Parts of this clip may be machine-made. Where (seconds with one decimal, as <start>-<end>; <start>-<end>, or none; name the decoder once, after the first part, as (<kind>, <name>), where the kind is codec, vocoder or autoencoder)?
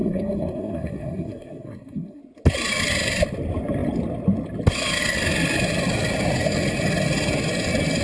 0.0-2.2 (codec, SNAC)